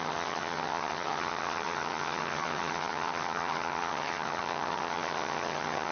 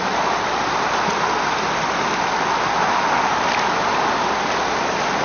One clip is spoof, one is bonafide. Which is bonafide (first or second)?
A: second